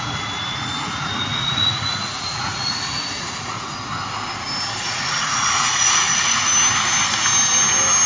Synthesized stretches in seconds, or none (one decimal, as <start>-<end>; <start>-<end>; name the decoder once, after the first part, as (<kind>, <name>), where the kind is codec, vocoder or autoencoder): 0.0-3.9 (vocoder, Vocos); 4.8-6.5